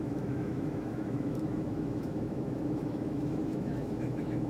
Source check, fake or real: fake